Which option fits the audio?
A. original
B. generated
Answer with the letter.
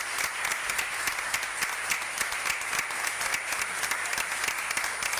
A